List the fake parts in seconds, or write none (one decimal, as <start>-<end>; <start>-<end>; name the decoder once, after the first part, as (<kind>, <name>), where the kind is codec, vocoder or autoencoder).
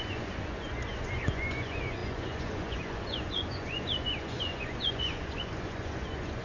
0.0-6.4 (vocoder, Vocos)